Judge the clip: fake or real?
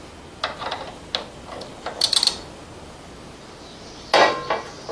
real